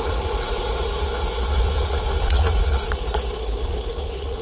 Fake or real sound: fake